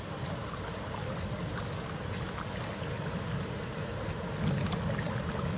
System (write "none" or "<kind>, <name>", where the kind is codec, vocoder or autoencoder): none